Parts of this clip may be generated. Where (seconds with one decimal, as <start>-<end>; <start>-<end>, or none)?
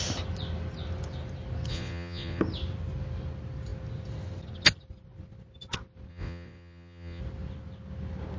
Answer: 1.7-2.4; 6.1-7.2